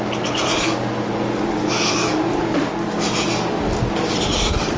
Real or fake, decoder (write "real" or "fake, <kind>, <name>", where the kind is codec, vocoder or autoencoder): real